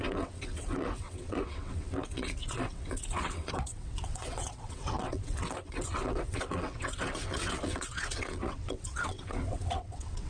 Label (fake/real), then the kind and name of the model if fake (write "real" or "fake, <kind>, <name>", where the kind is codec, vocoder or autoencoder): fake, vocoder, WaveNeXt